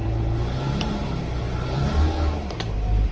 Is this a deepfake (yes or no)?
yes